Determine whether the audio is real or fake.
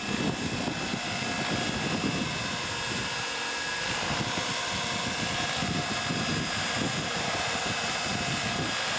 real